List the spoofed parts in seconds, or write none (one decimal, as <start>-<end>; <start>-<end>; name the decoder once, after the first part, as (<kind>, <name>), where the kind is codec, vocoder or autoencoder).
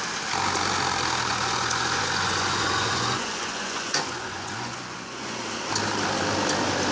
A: 1.3-5.4 (vocoder, Vocos)